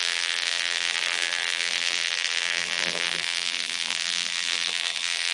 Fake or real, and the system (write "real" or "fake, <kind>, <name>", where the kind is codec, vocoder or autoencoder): fake, vocoder, BigVGAN v2